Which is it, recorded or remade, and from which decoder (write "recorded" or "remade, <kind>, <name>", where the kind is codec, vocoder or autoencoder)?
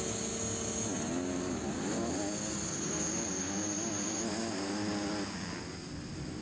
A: recorded